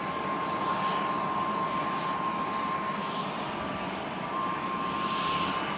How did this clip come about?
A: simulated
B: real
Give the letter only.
B